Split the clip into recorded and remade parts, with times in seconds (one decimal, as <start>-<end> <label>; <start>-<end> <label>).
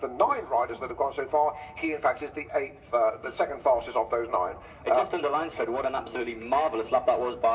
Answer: 0.0-4.5 remade; 4.5-5.2 recorded; 5.2-7.5 remade